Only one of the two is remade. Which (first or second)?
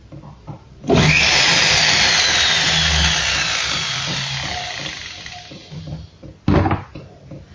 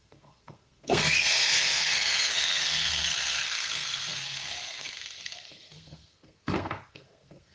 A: second